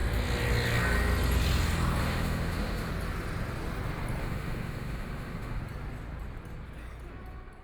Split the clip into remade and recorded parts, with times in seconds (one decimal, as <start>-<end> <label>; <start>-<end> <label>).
0.0-2.0 recorded; 2.0-2.9 remade; 2.9-4.2 recorded; 4.2-5.6 remade; 5.6-7.6 recorded